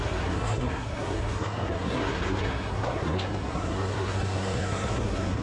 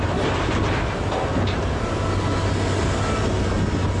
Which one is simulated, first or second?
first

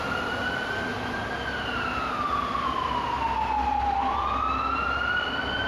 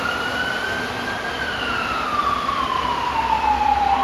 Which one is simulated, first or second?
second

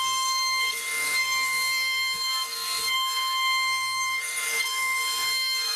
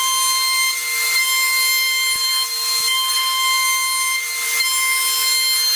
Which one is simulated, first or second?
first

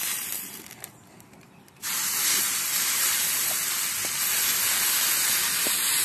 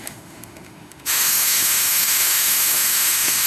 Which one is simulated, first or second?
second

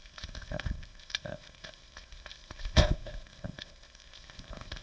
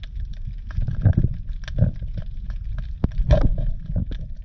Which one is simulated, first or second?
first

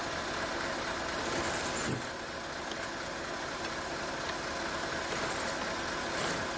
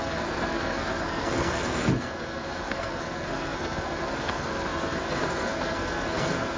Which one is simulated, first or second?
second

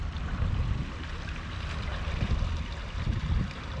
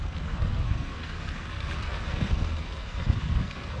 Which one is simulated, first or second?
second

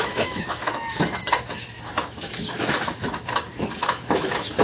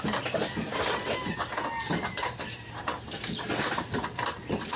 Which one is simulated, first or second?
first